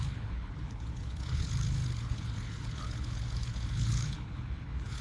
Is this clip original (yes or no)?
no